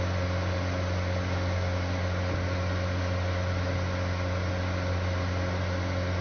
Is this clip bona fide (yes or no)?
yes